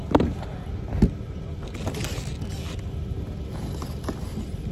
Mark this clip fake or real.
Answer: real